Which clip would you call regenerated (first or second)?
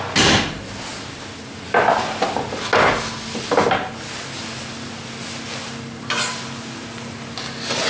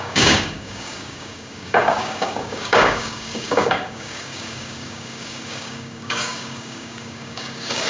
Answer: second